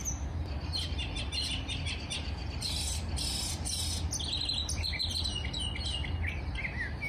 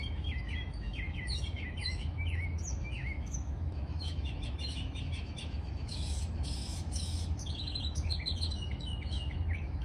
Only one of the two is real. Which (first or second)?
first